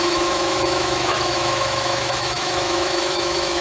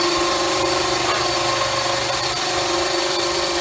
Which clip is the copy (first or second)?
first